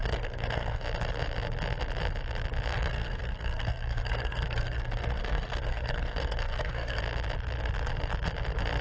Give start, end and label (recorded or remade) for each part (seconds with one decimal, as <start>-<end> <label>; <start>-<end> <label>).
0.0-0.8 remade; 0.8-2.7 recorded; 2.7-7.0 remade; 7.0-8.8 recorded